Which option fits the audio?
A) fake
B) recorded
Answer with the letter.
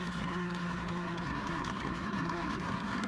A